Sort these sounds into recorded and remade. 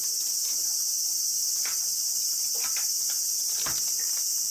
recorded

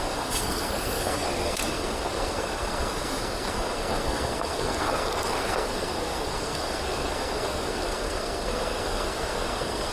remade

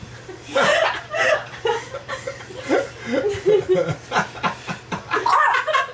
recorded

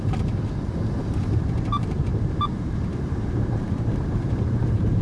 remade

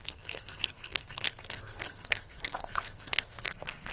remade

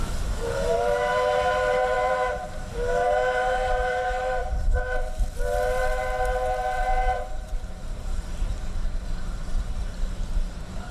remade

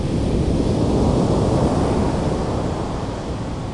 recorded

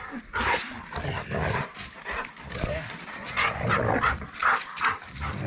recorded